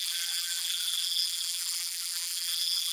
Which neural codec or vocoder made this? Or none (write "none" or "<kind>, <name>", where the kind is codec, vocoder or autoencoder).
vocoder, BigVGAN v2